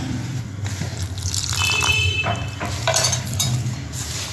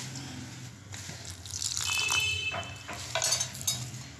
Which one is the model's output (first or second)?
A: first